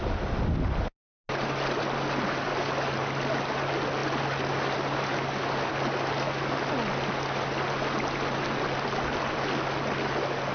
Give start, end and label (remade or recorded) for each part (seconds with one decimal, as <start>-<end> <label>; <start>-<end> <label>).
0.0-10.5 recorded